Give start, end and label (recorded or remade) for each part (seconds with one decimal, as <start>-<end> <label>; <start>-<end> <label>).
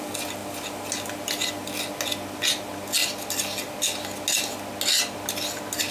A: 0.0-5.9 recorded